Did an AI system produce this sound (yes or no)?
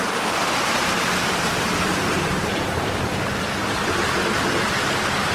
yes